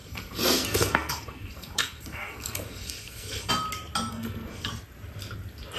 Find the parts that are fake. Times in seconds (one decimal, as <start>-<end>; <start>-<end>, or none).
0.0-3.5; 4.1-4.7